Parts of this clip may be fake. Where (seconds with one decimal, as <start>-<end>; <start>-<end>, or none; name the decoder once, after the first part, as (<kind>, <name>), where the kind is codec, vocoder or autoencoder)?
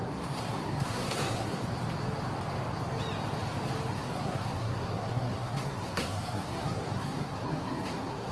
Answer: 0.0-1.6 (codec, SNAC); 3.9-8.3